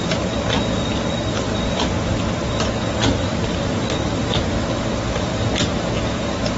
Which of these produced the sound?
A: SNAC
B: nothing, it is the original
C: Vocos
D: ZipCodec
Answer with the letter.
B